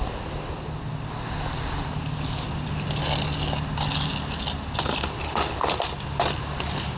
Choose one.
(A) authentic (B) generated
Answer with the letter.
A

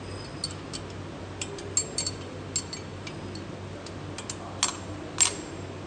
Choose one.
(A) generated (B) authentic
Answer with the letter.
B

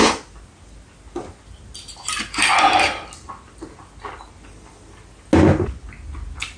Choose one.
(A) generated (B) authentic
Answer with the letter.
B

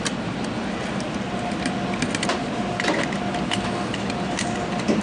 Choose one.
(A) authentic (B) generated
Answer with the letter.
A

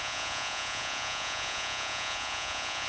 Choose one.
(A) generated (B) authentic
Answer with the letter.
A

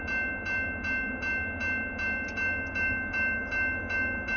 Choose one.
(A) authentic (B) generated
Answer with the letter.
A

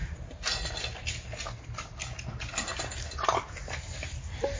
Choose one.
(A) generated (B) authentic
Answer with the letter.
B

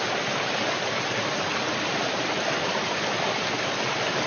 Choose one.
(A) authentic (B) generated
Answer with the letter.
A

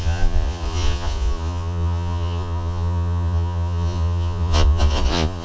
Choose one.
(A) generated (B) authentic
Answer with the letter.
A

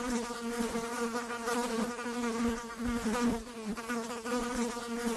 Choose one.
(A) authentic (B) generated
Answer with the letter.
B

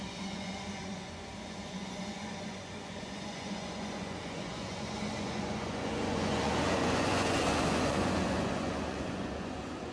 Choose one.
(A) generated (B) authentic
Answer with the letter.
A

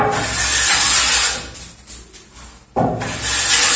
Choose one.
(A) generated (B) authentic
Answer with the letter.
B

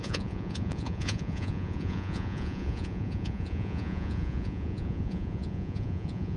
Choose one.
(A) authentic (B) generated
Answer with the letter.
B